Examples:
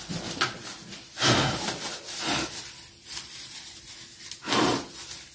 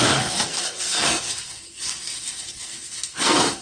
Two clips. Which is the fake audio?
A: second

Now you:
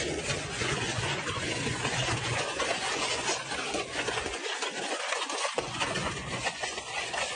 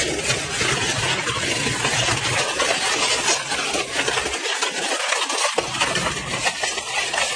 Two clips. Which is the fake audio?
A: first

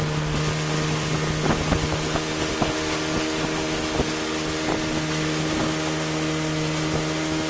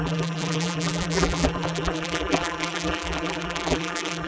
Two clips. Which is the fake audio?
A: second